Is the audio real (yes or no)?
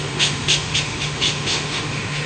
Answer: no